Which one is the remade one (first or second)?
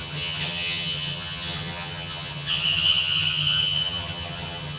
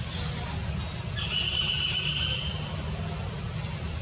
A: first